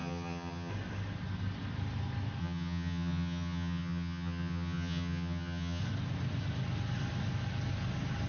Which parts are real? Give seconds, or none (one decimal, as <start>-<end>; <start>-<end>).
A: 0.7-2.4; 5.8-8.3